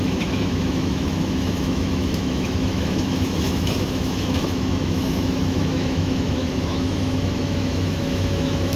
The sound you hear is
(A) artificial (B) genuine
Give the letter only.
A